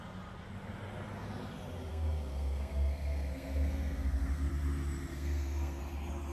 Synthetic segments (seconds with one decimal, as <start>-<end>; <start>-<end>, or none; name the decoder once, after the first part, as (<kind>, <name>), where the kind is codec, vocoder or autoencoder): 1.9-4.5 (codec, SNAC); 5.1-5.8